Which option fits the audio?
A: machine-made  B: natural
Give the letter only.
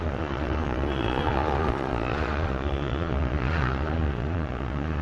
A